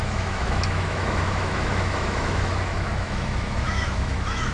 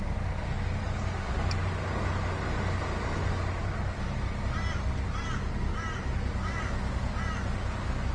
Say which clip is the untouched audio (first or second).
second